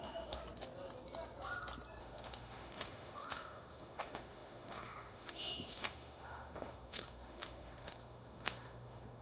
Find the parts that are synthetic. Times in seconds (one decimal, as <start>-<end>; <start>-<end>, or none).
0.0-0.4; 2.0-9.2

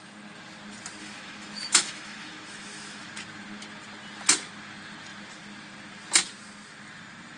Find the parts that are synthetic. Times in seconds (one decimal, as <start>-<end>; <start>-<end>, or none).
1.0-3.1

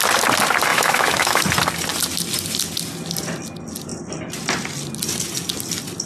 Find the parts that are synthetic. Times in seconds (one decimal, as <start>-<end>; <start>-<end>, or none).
0.7-1.4

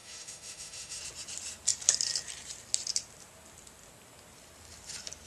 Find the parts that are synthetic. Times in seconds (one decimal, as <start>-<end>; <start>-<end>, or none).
0.0-1.0

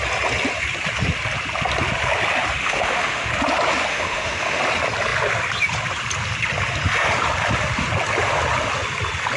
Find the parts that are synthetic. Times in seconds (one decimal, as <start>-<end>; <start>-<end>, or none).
2.6-3.3; 3.9-4.6

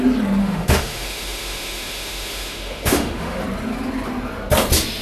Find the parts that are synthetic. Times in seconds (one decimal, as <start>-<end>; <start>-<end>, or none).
0.4-3.4

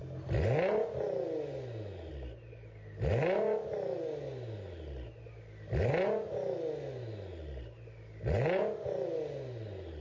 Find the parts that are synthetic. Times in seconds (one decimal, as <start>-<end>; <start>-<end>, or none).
none